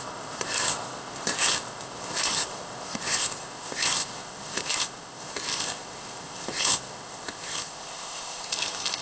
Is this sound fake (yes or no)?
yes